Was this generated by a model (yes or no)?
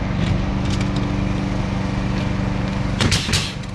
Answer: no